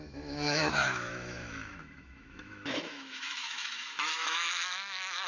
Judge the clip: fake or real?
fake